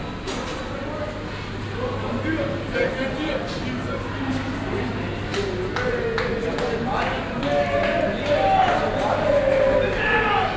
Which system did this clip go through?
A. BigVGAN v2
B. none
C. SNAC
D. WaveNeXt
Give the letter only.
B